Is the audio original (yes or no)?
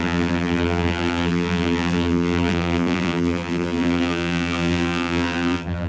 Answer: no